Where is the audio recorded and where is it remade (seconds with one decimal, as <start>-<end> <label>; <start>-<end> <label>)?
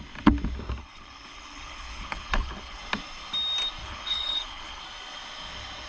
0.0-0.8 recorded; 0.8-2.8 remade; 2.8-3.8 recorded; 3.8-4.8 remade; 4.8-5.9 recorded